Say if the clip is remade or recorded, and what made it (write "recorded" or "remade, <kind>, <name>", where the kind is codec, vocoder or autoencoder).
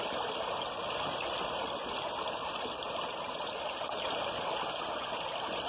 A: recorded